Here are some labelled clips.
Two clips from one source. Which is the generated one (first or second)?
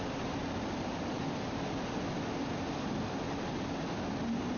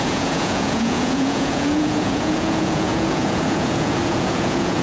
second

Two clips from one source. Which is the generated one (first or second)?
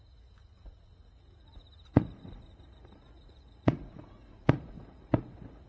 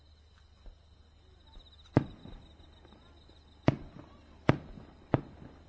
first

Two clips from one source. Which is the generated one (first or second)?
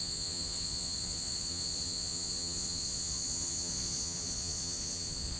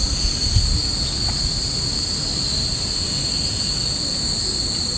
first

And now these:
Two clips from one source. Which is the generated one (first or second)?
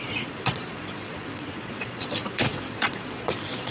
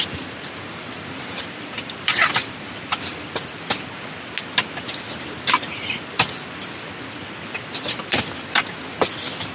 first